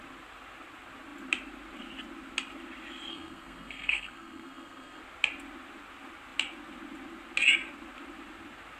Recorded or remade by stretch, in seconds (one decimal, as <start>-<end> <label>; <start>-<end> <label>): 0.0-3.1 recorded; 3.1-5.0 remade; 5.0-8.8 recorded